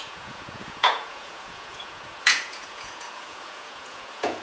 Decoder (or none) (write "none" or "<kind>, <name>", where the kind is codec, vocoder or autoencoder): vocoder, Vocos